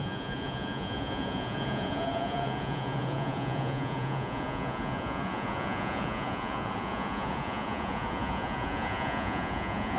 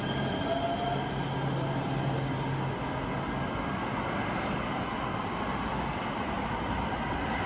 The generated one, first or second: first